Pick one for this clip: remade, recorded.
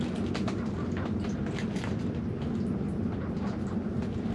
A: recorded